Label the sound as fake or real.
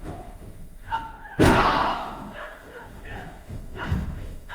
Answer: fake